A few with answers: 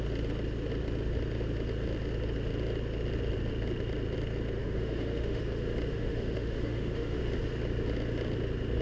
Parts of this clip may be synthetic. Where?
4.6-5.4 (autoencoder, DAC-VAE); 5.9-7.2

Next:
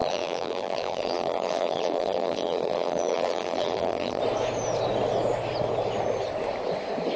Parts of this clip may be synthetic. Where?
0.0-4.2 (vocoder, BigVGAN v2)

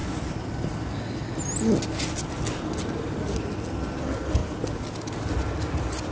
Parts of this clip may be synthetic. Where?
none

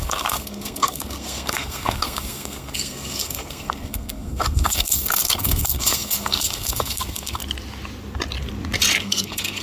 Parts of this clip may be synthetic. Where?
0.0-7.4 (codec, SNAC); 9.0-9.6

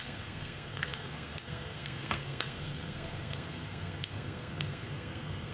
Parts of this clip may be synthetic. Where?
0.0-5.5 (codec, SNAC)

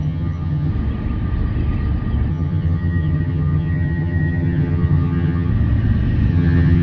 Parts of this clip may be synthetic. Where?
0.0-0.7 (vocoder, HiFi-GAN); 2.3-5.5; 6.3-6.8